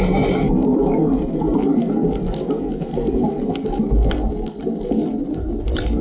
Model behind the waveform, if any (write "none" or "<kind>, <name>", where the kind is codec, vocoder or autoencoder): none